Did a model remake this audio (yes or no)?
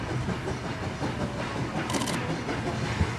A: no